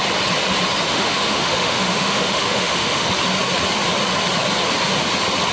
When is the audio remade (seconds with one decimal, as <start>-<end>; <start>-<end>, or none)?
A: 0.9-3.1